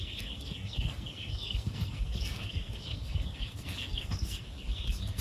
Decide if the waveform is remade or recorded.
remade